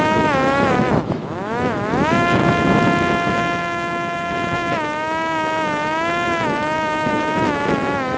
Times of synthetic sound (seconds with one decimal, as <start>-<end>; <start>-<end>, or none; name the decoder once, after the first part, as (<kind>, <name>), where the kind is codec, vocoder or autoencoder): 0.0-2.4 (autoencoder, DAC-VAE); 3.3-8.2